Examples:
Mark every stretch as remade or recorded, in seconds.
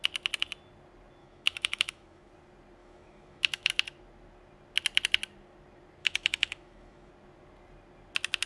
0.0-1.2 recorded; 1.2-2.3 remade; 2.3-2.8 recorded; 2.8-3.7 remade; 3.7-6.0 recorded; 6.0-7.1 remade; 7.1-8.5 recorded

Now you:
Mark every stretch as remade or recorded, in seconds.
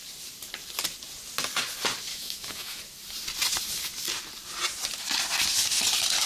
0.0-2.1 recorded; 2.1-2.8 remade; 2.8-6.3 recorded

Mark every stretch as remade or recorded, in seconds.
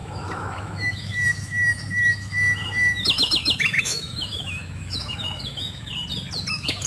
0.0-5.9 remade; 5.9-6.5 recorded; 6.5-6.9 remade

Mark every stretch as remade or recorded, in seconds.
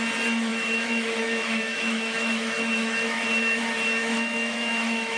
0.0-0.5 recorded; 0.5-3.6 remade; 3.6-4.0 recorded; 4.0-5.2 remade